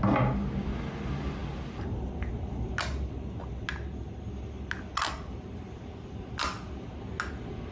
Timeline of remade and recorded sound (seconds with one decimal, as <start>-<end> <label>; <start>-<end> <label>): 0.0-7.7 recorded